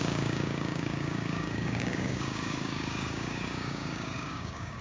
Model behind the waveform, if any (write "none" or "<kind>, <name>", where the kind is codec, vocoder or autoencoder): codec, DAC